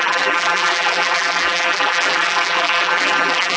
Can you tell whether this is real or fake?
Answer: fake